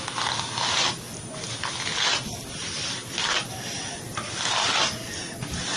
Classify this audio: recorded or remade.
recorded